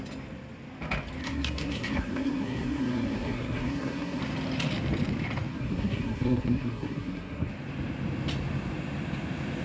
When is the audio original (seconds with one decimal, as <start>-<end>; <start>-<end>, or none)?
0.0-1.2; 4.2-5.5; 7.5-9.6